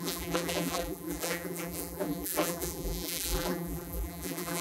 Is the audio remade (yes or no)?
yes